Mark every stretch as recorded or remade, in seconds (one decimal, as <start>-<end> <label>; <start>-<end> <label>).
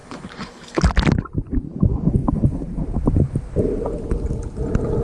0.0-0.8 remade; 0.8-5.0 recorded